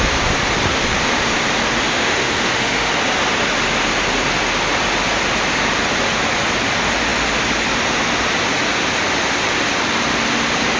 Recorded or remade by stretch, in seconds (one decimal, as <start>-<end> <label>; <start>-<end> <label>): 0.0-1.9 recorded; 1.9-2.9 remade; 2.9-10.8 recorded